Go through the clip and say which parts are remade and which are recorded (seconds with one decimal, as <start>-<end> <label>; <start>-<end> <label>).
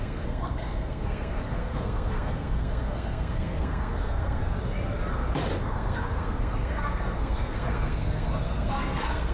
0.0-4.4 remade; 4.4-5.6 recorded; 5.6-9.3 remade